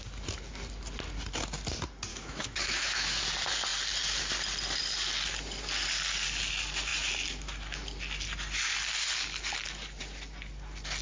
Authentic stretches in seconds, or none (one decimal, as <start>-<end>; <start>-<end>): 0.0-2.1; 3.2-11.0